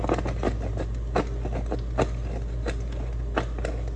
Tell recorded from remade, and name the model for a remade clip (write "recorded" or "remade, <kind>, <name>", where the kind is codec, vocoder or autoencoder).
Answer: recorded